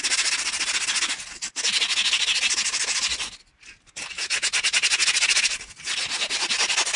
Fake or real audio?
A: real